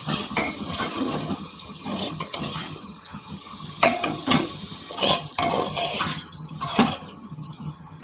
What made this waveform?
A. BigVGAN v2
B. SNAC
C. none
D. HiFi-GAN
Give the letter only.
D